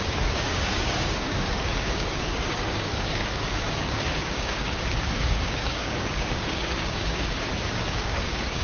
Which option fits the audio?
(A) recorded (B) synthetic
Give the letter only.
B